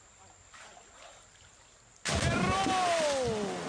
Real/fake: real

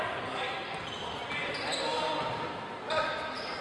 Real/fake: real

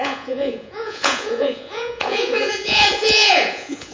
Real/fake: fake